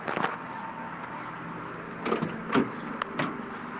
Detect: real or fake real